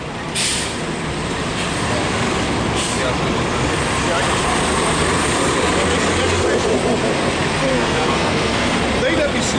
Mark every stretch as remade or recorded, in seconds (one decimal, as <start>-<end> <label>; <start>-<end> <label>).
0.0-7.7 recorded; 7.7-8.8 remade; 8.8-9.6 recorded